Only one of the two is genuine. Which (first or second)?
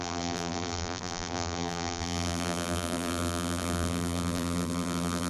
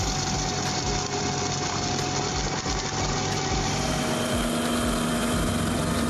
second